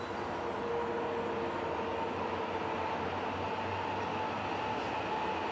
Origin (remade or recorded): recorded